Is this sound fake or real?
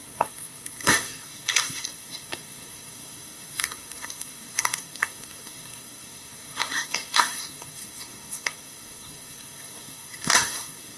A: fake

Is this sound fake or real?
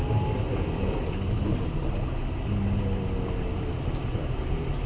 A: real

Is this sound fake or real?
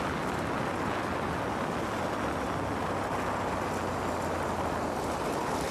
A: real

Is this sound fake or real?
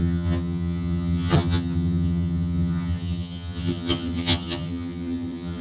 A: fake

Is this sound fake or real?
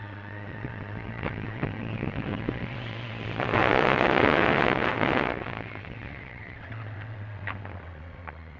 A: fake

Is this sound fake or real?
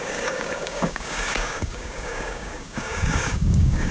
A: fake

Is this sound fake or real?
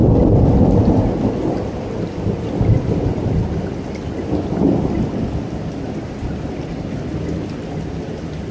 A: real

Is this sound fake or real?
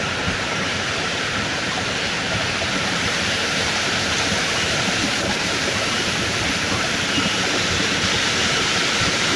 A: fake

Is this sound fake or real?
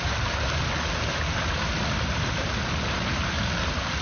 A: real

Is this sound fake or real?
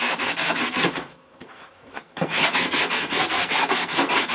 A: fake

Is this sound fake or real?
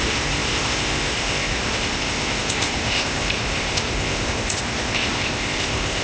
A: fake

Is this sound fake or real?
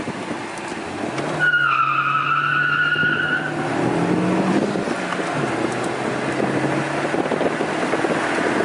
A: real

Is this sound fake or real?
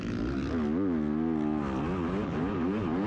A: real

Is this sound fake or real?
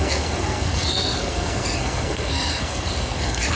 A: fake